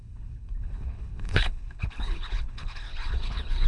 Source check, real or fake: fake